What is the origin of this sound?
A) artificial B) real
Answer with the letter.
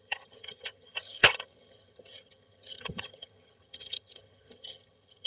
A